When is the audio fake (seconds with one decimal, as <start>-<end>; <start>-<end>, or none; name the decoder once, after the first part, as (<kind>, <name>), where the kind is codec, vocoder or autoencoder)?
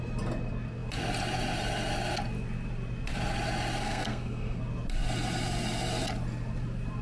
3.8-4.6 (codec, SNAC)